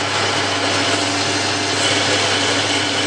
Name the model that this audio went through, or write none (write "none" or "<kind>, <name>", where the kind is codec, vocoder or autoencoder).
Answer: none